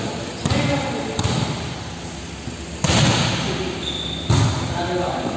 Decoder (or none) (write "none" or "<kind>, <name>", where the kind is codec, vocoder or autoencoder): none